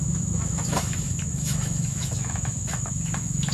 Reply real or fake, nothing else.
fake